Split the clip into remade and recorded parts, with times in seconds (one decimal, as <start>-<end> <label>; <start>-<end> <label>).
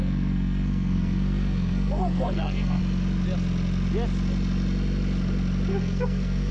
0.0-2.8 remade; 2.8-5.7 recorded; 5.7-6.5 remade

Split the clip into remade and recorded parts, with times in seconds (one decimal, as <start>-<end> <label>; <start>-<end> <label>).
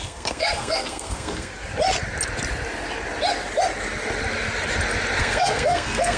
0.0-1.5 remade; 1.5-5.2 recorded; 5.2-6.2 remade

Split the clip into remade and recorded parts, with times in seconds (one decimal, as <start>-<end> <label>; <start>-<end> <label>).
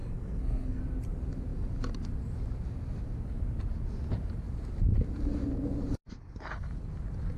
0.0-0.8 remade; 0.8-7.4 recorded